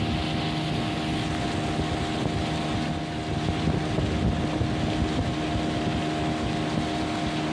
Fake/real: real